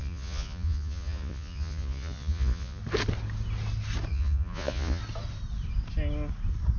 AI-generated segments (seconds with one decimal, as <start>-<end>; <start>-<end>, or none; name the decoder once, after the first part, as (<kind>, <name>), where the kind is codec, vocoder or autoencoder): 0.0-2.8 (vocoder, Vocos); 4.1-5.0